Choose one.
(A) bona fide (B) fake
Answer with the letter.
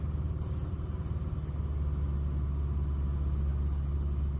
A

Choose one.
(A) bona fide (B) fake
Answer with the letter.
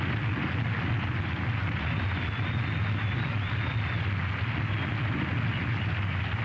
A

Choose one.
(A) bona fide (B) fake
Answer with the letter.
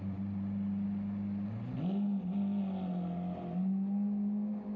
A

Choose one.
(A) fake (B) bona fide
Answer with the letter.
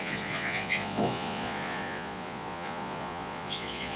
A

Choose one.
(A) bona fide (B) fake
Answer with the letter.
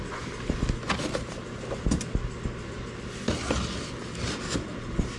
A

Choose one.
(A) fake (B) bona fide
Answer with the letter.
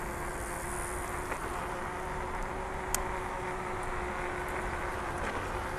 B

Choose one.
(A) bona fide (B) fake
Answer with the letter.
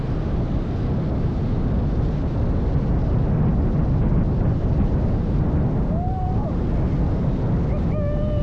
A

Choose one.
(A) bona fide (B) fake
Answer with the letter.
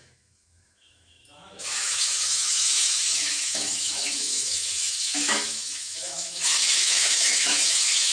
B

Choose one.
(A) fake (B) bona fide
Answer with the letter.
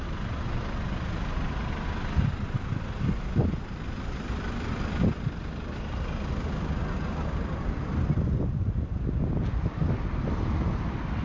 B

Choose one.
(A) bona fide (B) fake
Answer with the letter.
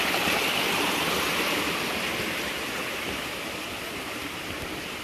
A